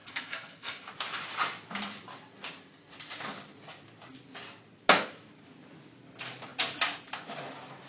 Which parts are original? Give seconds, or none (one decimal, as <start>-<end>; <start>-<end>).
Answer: 0.9-7.9